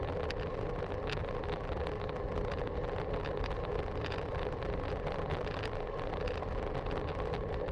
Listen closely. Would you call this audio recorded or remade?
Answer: recorded